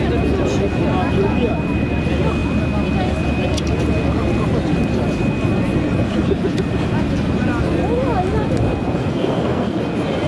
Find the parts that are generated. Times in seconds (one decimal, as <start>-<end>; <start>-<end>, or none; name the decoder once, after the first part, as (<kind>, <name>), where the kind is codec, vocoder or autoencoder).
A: 9.0-9.8 (codec, SNAC)